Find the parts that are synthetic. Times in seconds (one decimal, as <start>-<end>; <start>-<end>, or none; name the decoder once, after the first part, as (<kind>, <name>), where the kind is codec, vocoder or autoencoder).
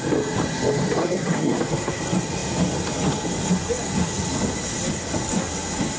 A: 1.0-2.0 (codec, SNAC)